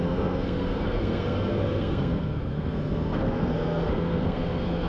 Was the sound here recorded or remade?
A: remade